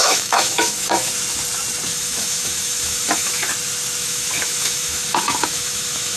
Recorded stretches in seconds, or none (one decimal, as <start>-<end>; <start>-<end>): 1.1-1.9; 3.5-4.0